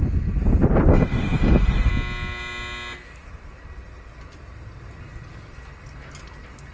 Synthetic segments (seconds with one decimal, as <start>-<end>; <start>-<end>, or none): 0.9-1.9